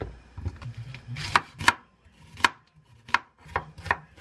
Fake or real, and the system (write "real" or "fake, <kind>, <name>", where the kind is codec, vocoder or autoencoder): real